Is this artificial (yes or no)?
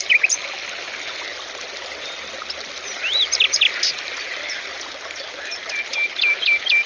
no